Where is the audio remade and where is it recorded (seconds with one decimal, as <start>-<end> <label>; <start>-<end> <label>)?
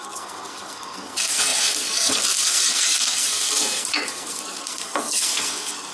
0.0-5.9 remade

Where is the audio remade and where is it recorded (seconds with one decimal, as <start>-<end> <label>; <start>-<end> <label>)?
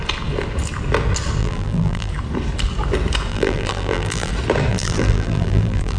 0.0-1.4 recorded; 1.4-2.1 remade; 2.1-3.3 recorded; 3.3-4.3 remade; 4.3-4.7 recorded; 4.7-6.0 remade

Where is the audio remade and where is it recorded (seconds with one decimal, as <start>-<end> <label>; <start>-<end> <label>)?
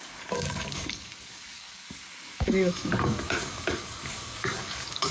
0.0-5.1 remade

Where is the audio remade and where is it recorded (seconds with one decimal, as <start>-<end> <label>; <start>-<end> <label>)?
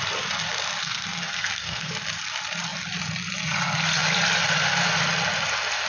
0.0-0.8 recorded; 0.8-1.9 remade; 1.9-5.9 recorded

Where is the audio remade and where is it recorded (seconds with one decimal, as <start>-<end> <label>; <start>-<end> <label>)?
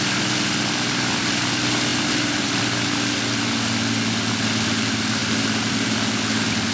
0.0-6.7 recorded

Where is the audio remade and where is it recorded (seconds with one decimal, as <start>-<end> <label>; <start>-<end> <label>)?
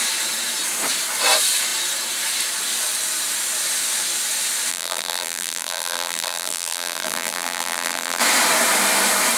0.0-4.7 recorded; 4.7-8.2 remade; 8.2-9.4 recorded